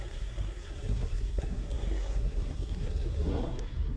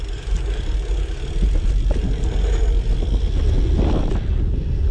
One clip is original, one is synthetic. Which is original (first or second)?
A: second